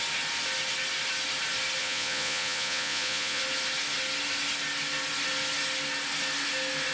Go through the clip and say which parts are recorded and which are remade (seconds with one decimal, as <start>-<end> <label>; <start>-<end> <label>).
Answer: 0.0-1.8 recorded; 1.8-3.4 remade; 3.4-6.9 recorded